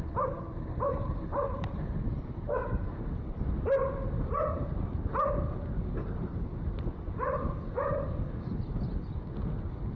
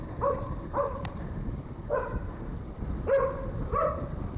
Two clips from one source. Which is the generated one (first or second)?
second